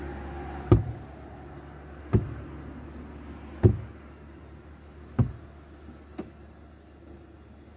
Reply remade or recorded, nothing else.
recorded